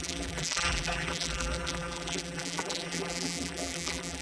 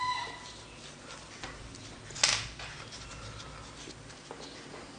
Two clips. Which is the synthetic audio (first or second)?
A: first